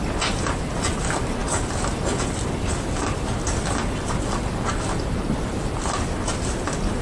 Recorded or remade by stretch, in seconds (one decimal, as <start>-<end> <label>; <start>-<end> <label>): 0.0-7.0 recorded